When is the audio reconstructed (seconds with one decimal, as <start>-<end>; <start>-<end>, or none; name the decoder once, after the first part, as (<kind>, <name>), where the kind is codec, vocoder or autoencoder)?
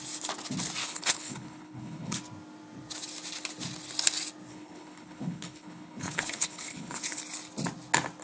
0.8-2.2 (codec, HILCodec); 4.5-7.2